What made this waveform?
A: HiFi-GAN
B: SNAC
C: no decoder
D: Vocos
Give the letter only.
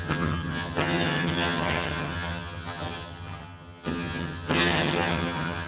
A